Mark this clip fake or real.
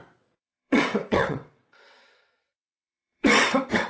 fake